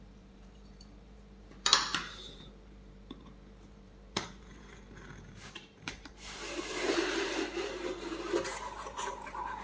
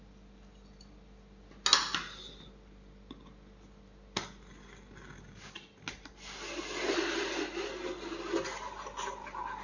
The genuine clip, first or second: second